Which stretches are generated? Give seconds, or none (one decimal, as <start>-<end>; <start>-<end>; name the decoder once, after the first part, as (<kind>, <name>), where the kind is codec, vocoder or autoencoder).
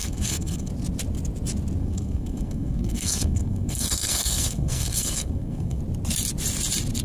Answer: 0.0-0.7 (codec, SNAC); 1.8-5.8